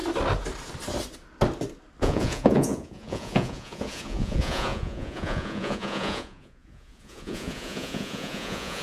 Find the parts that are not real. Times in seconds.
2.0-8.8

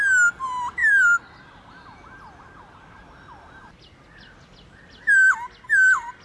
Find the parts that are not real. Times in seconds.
none